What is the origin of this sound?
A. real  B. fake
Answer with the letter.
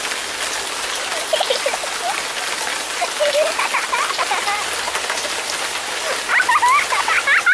A